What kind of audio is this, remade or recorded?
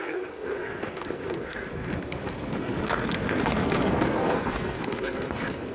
remade